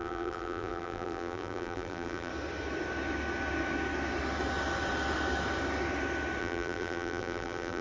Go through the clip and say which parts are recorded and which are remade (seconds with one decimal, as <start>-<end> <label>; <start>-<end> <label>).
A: 0.0-2.3 remade; 2.3-6.4 recorded; 6.4-7.8 remade